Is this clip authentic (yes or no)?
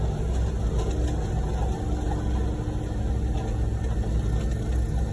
yes